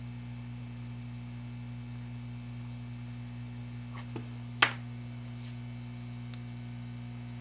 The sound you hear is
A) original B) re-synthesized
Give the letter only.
A